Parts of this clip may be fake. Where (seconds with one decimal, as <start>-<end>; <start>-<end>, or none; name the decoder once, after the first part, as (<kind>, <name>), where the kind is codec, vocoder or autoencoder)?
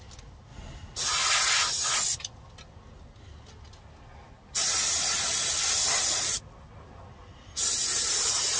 none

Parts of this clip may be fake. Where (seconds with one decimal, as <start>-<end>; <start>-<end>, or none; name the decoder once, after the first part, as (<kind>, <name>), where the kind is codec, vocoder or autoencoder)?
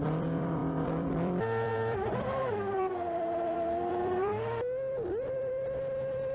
0.0-6.3 (vocoder, BigVGAN v2)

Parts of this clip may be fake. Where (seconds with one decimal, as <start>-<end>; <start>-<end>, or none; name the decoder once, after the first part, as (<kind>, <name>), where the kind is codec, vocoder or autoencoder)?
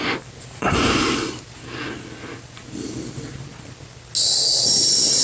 none